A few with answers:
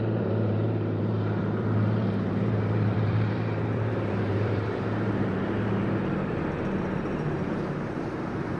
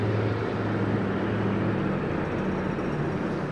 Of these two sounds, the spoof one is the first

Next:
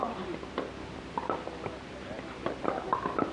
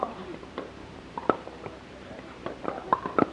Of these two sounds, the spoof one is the second